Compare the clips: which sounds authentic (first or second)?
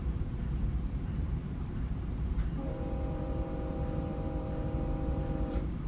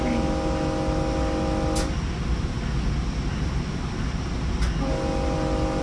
second